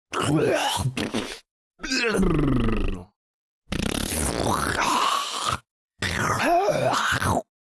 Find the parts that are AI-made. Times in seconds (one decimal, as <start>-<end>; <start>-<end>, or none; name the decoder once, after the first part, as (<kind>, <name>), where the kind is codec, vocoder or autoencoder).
0.6-1.8 (autoencoder, DAC-VAE); 5.2-6.4